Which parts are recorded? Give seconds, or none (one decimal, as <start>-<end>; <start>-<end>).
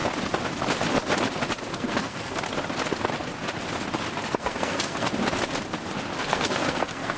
0.0-1.7; 2.4-4.2; 5.1-6.3